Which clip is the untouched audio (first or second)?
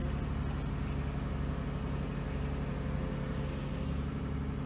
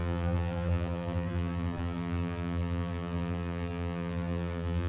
first